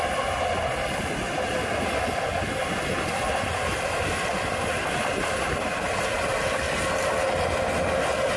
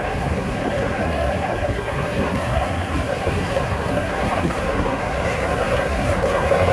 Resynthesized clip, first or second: second